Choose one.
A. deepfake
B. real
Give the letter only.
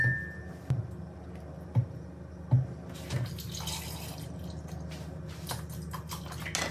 B